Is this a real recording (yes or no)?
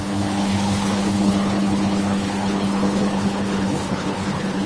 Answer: no